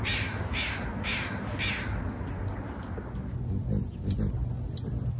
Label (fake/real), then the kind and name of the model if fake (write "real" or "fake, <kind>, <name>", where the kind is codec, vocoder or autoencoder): real